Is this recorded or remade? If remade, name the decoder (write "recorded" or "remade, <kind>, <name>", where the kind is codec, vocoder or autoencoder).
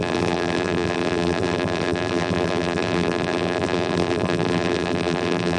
remade, vocoder, BigVGAN v2